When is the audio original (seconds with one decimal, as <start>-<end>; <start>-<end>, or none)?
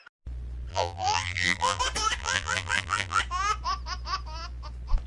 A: 0.0-0.7; 1.8-2.2; 3.2-5.1